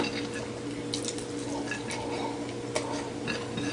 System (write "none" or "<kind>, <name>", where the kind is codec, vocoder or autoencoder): none